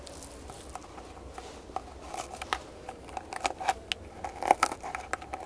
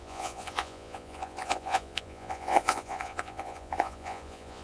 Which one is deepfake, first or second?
second